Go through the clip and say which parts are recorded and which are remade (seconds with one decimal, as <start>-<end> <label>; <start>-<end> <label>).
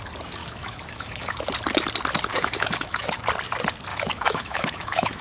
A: 0.0-0.4 recorded; 0.4-1.5 remade; 1.5-2.3 recorded; 2.3-3.2 remade; 3.2-3.9 recorded; 3.9-5.2 remade